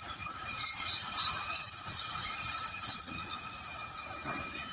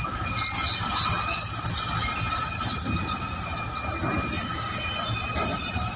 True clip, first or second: second